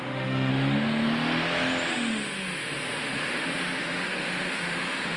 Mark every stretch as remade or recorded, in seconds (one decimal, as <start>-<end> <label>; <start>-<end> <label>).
0.0-0.5 remade; 0.5-1.9 recorded; 1.9-5.2 remade